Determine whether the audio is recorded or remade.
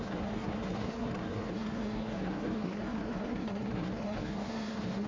remade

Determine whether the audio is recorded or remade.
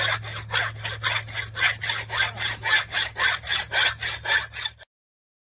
recorded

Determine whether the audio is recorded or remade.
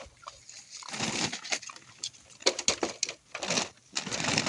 recorded